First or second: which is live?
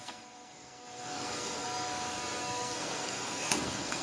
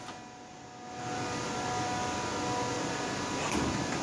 second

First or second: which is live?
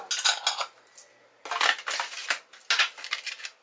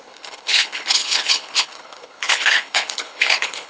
first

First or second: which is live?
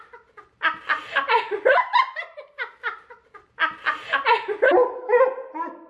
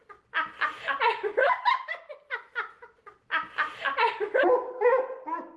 second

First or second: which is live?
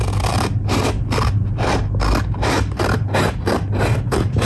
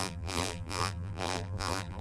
first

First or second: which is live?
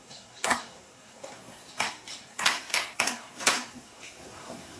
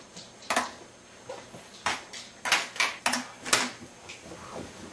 second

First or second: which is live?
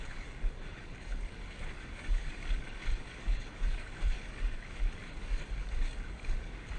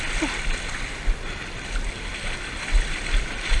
second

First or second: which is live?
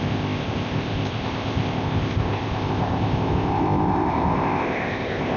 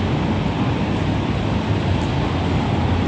second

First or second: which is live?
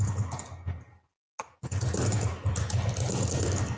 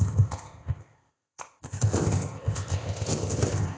first